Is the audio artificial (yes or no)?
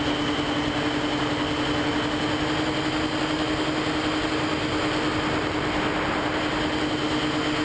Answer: no